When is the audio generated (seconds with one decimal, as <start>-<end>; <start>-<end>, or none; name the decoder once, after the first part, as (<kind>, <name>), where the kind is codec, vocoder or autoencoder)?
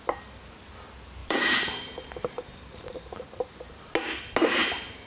1.2-3.9 (vocoder, BigVGAN v2)